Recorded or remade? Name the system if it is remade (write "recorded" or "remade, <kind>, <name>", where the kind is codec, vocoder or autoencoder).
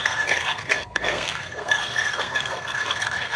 remade, codec, SNAC